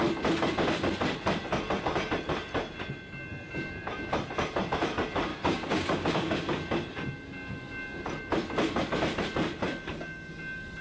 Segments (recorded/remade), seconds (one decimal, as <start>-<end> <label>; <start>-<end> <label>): 0.0-5.3 recorded; 5.3-6.5 remade; 6.5-10.8 recorded